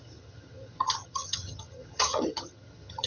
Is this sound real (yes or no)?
no